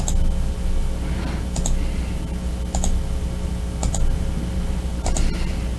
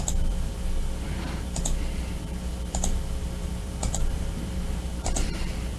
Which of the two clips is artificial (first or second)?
second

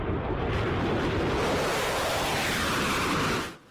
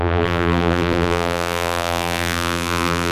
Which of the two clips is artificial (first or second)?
second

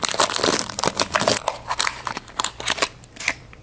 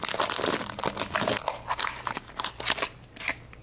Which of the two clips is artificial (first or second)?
first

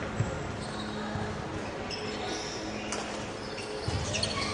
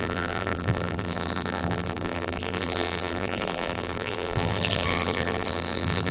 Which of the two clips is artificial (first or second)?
second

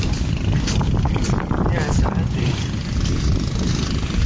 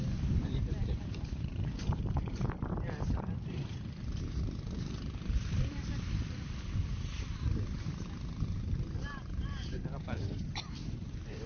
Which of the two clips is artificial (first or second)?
second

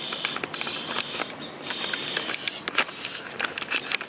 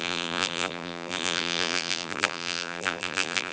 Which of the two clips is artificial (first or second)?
second